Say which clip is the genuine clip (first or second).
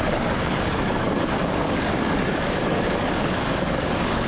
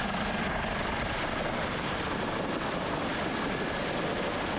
second